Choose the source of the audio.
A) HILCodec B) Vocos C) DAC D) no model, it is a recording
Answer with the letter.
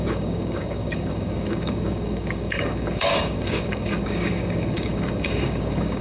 C